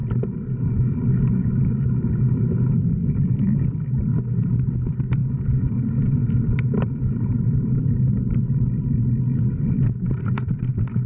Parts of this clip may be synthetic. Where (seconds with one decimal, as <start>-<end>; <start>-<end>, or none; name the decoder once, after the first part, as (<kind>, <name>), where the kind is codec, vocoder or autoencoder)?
1.4-5.2 (vocoder, BigVGAN v2); 5.8-7.3; 7.8-11.1